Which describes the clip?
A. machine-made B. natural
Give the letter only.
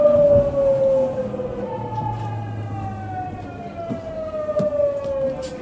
B